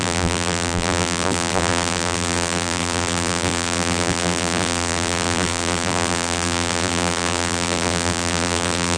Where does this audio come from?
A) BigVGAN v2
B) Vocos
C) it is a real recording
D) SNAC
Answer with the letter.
A